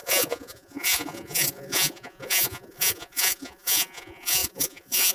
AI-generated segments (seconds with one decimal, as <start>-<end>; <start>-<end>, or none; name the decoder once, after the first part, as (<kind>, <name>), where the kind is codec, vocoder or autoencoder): 0.0-5.1 (vocoder, Vocos)

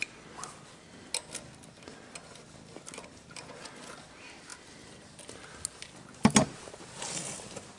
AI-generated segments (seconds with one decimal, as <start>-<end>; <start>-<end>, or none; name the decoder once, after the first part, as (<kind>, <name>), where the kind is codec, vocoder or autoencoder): none

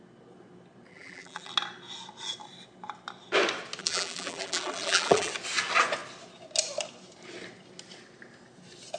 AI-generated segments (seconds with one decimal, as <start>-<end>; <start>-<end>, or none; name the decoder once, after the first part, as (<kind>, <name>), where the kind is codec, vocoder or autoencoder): 0.9-1.5 (vocoder, BigVGAN v2); 3.8-5.3

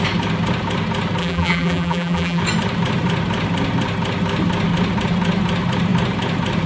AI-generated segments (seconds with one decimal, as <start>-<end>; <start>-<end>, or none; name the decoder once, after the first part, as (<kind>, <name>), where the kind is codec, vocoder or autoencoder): 1.2-2.4 (vocoder, BigVGAN v2)

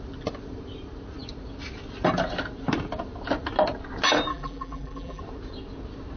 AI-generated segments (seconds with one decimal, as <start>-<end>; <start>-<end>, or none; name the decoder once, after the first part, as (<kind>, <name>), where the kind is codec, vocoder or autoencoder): 4.3-5.2 (vocoder, BigVGAN v2)

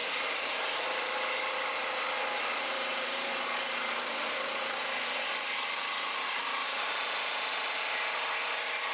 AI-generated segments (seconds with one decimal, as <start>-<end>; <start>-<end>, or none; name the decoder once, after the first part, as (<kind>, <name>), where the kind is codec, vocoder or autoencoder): 2.6-8.9 (vocoder, BigVGAN v2)

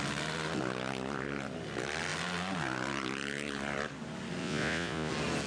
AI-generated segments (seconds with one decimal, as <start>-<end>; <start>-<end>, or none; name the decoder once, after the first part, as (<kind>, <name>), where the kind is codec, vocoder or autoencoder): 4.4-5.1 (vocoder, Vocos)

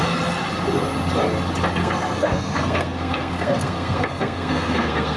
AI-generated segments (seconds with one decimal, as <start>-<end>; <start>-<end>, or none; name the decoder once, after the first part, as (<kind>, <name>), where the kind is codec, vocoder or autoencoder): 1.8-5.2 (codec, SNAC)